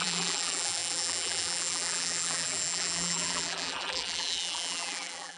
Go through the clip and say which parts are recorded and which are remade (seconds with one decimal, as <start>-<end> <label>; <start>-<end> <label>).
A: 0.0-5.4 remade